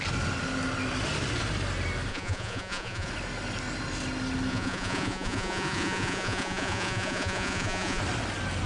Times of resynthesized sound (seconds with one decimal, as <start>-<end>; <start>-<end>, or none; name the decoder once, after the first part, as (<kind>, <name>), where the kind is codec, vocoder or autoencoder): 2.1-3.1 (vocoder, Vocos); 4.5-8.0